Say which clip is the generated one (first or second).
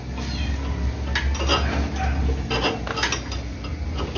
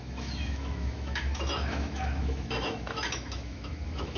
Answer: second